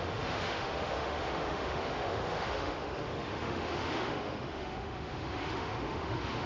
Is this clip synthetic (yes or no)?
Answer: yes